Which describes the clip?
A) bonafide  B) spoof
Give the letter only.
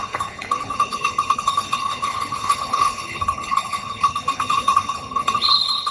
B